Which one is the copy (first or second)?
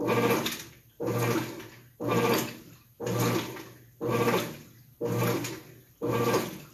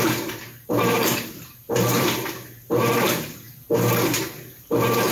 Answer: second